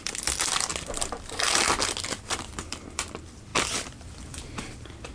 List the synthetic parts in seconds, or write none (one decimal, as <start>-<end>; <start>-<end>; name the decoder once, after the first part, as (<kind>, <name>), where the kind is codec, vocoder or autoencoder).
0.0-0.7 (vocoder, BigVGAN v2); 2.4-5.1